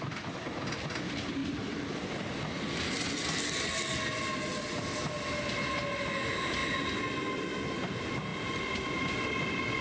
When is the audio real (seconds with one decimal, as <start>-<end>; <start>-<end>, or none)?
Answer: 0.0-9.8